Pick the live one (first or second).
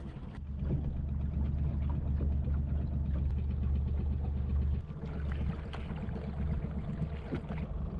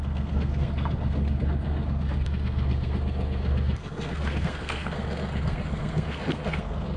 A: first